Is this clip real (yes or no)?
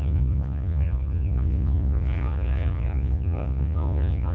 no